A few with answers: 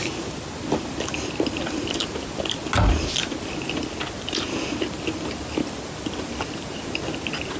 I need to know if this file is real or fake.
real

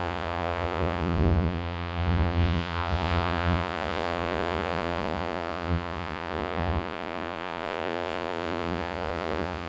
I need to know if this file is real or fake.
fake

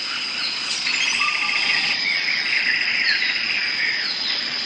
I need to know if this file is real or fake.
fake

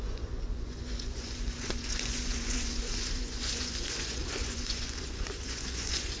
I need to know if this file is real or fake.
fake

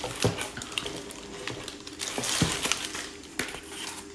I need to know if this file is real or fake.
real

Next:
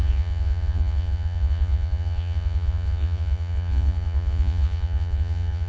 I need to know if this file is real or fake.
fake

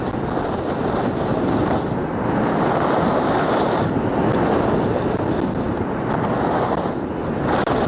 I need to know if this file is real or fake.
real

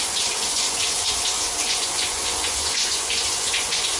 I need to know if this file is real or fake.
fake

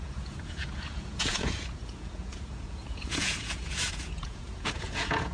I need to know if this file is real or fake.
fake